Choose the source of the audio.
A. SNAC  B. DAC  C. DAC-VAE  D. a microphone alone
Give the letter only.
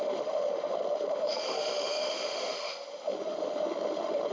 C